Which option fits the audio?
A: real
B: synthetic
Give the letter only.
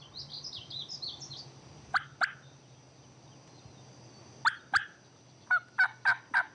A